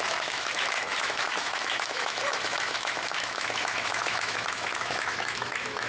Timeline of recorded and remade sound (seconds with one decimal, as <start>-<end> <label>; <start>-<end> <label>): 0.0-5.9 remade